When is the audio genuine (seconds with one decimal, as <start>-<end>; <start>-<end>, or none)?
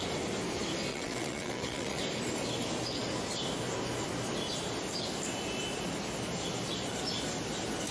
0.0-0.9; 2.0-7.9